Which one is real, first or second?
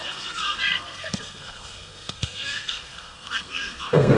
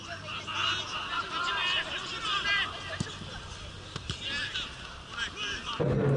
second